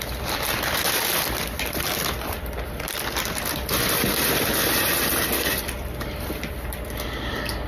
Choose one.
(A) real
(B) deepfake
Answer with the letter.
B